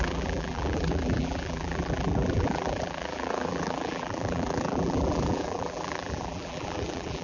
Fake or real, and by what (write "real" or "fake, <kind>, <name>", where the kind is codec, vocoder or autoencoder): fake, vocoder, BigVGAN v2